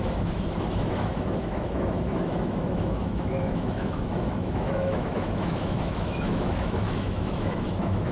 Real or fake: fake